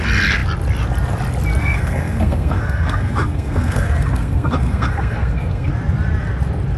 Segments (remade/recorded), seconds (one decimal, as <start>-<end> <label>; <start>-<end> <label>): 0.0-1.6 recorded; 1.6-5.7 remade; 5.7-6.8 recorded